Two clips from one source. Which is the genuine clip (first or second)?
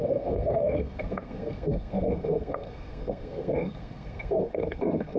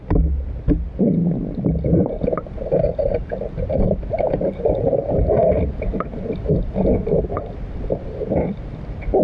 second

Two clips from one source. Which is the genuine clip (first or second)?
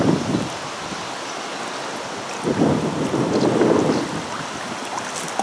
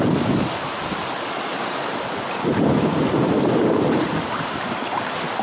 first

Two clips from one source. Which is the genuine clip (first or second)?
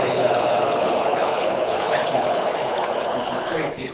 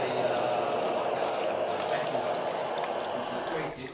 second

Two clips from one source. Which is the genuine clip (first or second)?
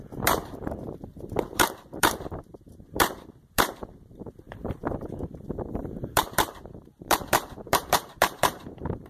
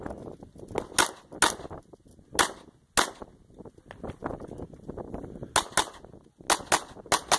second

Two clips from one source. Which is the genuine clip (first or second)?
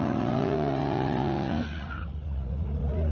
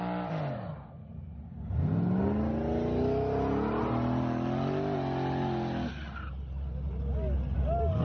second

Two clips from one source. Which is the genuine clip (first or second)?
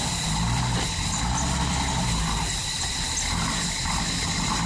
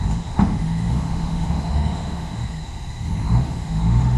first